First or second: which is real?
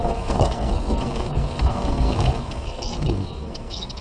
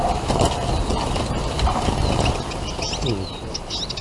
second